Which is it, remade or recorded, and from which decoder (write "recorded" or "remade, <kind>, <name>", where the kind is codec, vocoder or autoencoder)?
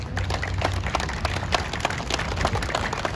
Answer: recorded